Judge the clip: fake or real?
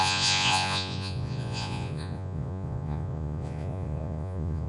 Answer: fake